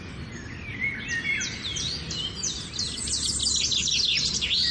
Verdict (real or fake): real